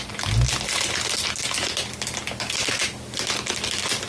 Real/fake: real